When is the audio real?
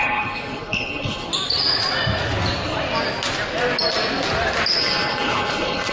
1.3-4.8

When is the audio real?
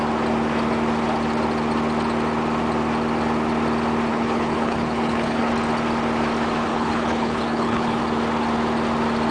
0.0-4.1; 5.5-6.7; 8.0-9.3